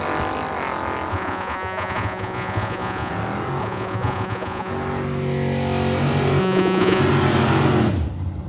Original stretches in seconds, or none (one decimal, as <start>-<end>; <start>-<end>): 0.0-1.1; 3.1-3.6; 4.7-6.4; 7.0-8.5